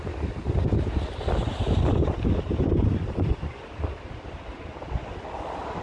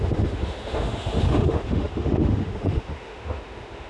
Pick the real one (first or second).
first